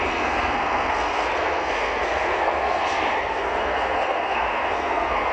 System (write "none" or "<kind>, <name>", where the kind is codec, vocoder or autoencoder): codec, SNAC